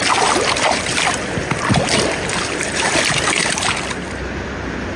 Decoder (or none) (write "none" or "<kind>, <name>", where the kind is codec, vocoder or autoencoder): none